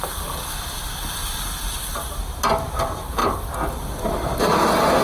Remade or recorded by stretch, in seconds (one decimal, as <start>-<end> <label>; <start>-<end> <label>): 0.0-1.2 remade; 1.2-2.8 recorded; 2.8-3.2 remade; 3.2-4.4 recorded; 4.4-5.0 remade